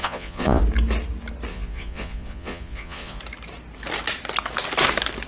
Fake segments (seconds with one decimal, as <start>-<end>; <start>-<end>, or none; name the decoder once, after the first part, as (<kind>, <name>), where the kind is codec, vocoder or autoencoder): 0.0-0.6 (vocoder, Vocos); 1.5-3.2